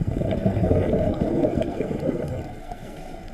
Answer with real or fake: fake